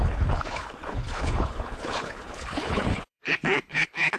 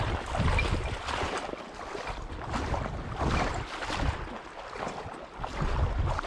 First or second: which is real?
second